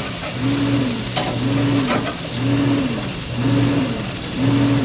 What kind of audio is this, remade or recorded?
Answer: recorded